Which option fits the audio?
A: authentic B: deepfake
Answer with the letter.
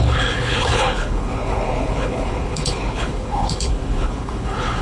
B